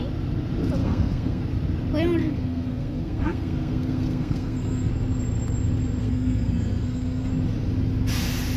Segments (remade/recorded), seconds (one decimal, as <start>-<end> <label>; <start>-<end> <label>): 0.0-0.8 recorded; 0.8-1.4 remade; 1.4-2.2 recorded; 2.2-4.9 remade; 4.9-6.0 recorded; 6.0-7.3 remade; 7.3-8.6 recorded